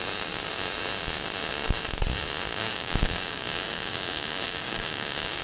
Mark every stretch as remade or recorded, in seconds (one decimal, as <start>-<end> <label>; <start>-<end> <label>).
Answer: 0.0-2.6 recorded; 2.6-5.4 remade